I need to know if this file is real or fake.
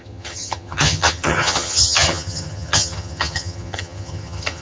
fake